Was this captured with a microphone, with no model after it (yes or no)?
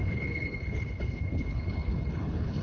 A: no